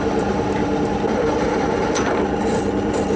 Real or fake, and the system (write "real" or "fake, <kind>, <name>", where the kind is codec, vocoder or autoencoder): fake, vocoder, BigVGAN v2